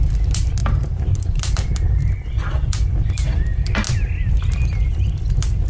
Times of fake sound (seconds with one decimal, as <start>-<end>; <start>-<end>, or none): 0.0-0.6; 1.3-3.5; 4.4-5.7